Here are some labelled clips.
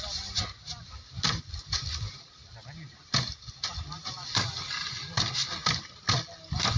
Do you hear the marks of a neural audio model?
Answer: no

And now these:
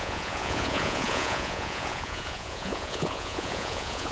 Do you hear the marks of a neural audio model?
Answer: yes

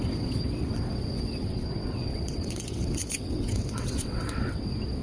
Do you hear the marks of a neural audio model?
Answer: yes